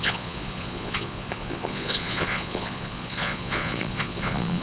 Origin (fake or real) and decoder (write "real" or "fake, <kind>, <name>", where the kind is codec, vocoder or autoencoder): fake, vocoder, Vocos